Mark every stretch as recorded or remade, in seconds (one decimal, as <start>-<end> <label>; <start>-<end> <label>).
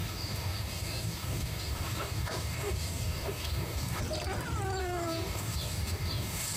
0.0-4.0 remade; 4.0-4.8 recorded; 4.8-6.6 remade